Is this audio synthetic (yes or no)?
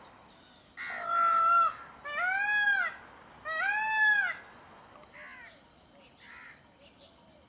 no